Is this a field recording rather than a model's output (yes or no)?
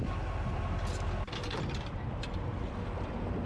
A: yes